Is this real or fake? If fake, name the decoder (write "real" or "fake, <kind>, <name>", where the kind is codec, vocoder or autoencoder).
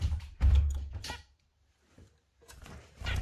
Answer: fake, vocoder, BigVGAN v2